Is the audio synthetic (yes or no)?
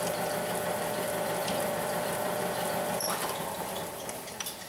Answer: yes